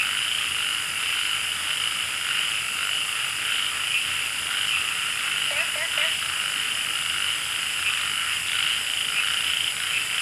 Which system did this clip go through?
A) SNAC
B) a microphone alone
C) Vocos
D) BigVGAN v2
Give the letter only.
B